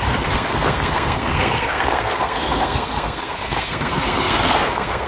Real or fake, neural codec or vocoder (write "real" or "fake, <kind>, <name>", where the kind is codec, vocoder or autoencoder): fake, codec, SNAC